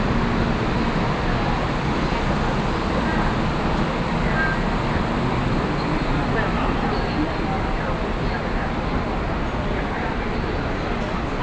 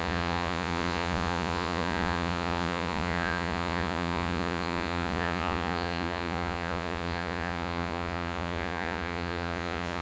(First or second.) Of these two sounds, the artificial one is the second